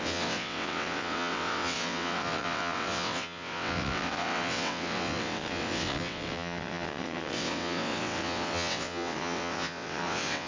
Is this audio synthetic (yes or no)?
yes